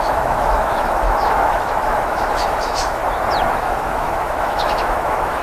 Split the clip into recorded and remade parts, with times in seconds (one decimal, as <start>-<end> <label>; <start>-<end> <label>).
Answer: 0.0-3.0 remade; 3.0-3.5 recorded; 3.5-5.4 remade

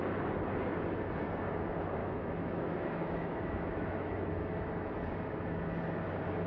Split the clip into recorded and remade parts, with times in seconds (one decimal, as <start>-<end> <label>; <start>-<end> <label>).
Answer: 0.0-2.0 recorded; 2.0-4.7 remade; 4.7-6.5 recorded

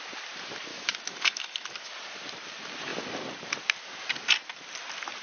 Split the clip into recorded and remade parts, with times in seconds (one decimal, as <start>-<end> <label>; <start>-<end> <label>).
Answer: 0.0-0.7 recorded; 0.7-1.9 remade; 1.9-5.2 recorded

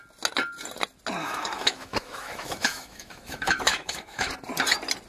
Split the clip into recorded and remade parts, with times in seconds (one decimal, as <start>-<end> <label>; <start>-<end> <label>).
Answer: 0.0-1.2 recorded; 1.2-4.3 remade; 4.3-5.1 recorded

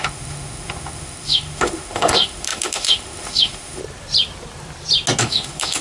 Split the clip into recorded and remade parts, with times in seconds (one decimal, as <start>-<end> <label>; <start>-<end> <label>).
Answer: 0.0-3.8 remade; 3.8-5.2 recorded; 5.2-5.8 remade

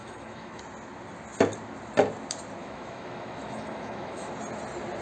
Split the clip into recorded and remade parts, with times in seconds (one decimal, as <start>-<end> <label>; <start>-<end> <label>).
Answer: 0.0-0.6 remade; 0.6-2.6 recorded; 2.6-4.3 remade; 4.3-5.0 recorded

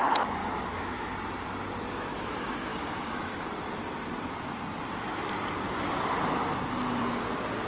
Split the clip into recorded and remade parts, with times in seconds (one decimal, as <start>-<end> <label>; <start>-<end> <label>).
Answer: 0.0-0.4 recorded; 0.4-1.1 remade; 1.1-2.1 recorded; 2.1-3.4 remade; 3.4-7.7 recorded

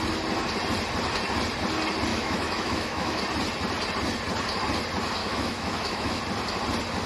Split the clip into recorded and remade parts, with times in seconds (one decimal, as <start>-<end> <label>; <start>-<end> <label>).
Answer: 0.0-2.1 recorded; 2.1-3.2 remade; 3.2-5.2 recorded; 5.2-6.2 remade; 6.2-7.1 recorded